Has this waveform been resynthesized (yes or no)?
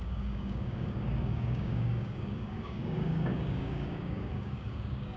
yes